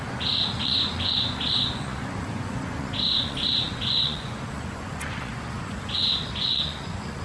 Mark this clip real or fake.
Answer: fake